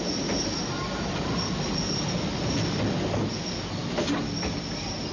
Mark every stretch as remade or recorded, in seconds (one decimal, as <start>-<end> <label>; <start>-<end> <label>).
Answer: 0.0-5.1 recorded